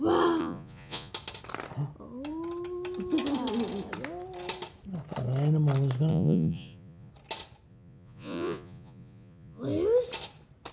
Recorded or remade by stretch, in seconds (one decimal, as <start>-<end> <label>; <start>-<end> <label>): 0.0-0.4 recorded; 0.4-1.1 remade; 1.1-6.1 recorded; 6.1-7.1 remade; 7.1-7.7 recorded; 7.7-9.6 remade; 9.6-10.7 recorded